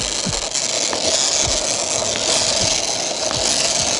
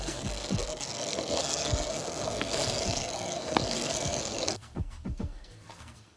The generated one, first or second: second